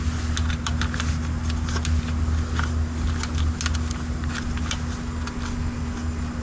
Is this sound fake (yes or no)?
no